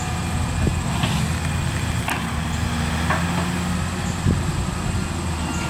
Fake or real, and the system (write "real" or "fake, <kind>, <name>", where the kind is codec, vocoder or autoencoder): real